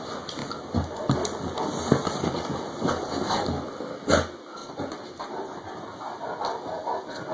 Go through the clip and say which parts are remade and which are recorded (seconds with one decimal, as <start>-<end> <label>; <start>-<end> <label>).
0.0-4.6 recorded; 4.6-5.7 remade; 5.7-7.3 recorded